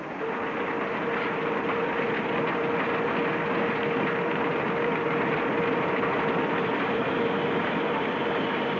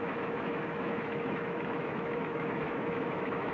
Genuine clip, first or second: first